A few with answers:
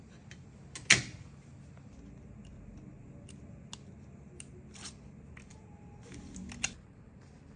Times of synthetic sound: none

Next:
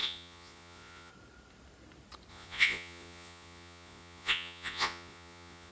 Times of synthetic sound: 0.0-1.1; 2.3-5.7

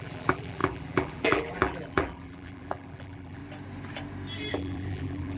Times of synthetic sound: 0.0-3.4; 4.5-5.4

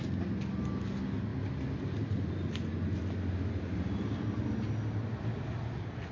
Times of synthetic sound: none

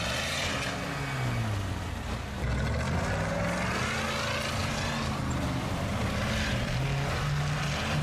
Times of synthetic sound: 4.6-6.7

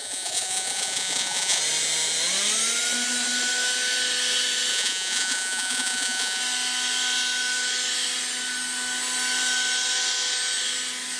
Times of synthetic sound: 0.0-1.6; 4.7-6.4